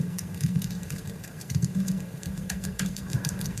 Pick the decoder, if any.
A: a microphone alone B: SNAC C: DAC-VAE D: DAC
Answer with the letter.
B